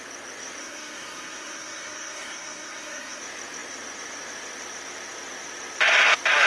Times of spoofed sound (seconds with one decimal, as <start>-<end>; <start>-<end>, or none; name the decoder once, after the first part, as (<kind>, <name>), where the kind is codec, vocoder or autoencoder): 0.6-3.2 (codec, SNAC)